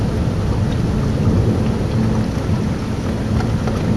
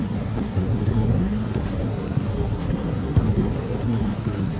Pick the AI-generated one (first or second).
second